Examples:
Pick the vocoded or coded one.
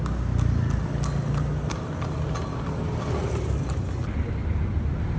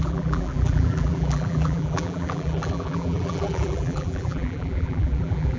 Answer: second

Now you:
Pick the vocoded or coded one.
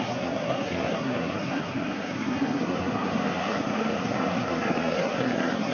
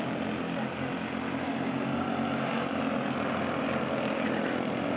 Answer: first